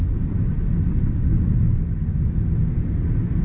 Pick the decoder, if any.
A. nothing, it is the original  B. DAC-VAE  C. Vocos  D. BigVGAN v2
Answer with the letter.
A